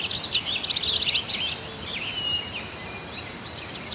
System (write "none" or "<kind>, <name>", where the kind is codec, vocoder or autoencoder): none